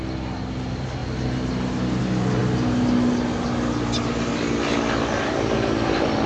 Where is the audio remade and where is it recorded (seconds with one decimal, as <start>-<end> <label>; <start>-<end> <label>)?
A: 0.0-6.3 recorded